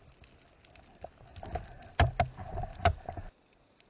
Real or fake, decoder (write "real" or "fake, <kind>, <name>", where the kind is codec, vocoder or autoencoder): real